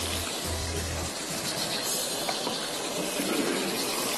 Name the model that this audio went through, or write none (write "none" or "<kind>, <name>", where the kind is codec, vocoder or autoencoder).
none